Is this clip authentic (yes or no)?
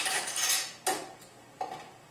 yes